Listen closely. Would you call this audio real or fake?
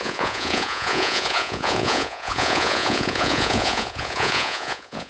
fake